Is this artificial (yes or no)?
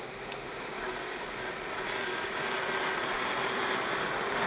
no